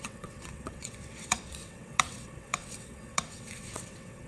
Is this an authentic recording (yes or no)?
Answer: no